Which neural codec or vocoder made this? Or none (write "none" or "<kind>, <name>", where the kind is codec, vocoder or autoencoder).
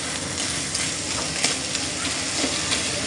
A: none